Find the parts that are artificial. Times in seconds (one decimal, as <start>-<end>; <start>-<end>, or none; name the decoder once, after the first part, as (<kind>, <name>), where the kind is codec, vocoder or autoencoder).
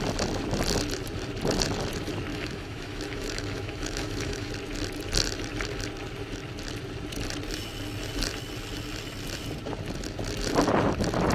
2.3-4.5 (autoencoder, DAC-VAE)